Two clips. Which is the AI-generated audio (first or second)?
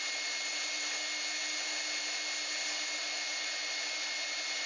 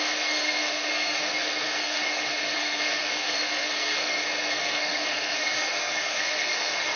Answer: second